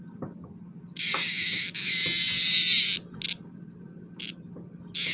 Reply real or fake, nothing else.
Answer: real